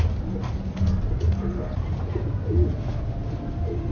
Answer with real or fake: real